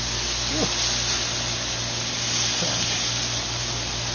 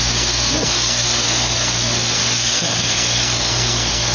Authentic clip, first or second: first